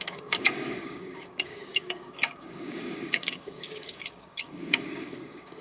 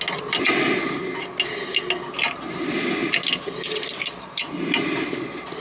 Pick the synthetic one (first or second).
first